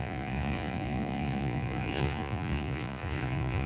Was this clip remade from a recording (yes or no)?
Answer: yes